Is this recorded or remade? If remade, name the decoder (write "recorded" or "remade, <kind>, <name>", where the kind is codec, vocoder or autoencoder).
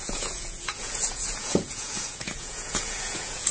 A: remade, vocoder, Vocos